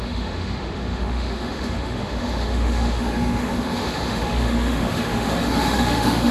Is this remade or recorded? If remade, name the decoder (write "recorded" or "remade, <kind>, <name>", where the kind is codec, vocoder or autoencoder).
remade, autoencoder, DAC-VAE